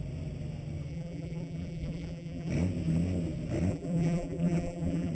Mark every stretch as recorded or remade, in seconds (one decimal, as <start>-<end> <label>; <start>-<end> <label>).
0.0-0.9 recorded; 0.9-2.5 remade; 2.5-3.7 recorded; 3.7-5.1 remade